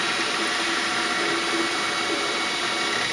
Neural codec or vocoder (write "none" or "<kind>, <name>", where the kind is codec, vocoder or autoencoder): none